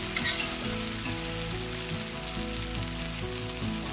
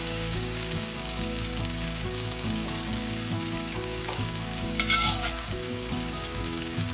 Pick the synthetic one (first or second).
second